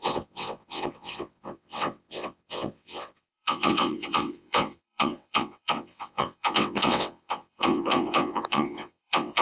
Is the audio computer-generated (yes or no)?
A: yes